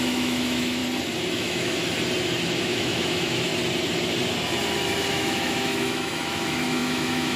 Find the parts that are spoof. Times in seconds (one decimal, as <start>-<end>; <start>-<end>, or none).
0.0-0.8; 1.3-1.8; 2.6-3.5; 5.1-7.4